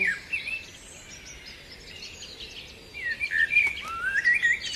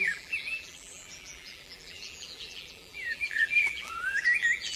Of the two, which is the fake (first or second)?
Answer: second